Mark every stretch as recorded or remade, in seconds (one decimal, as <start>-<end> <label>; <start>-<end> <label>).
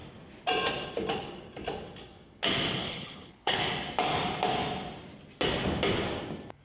0.0-2.8 recorded; 2.8-3.6 remade; 3.6-6.6 recorded